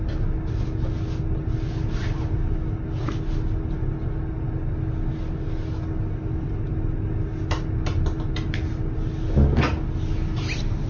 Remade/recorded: recorded